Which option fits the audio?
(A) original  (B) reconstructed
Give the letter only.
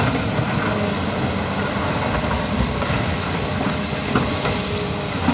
A